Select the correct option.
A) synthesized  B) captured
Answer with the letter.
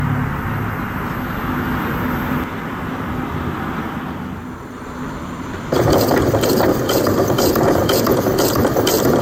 B